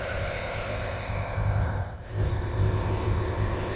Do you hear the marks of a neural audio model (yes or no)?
yes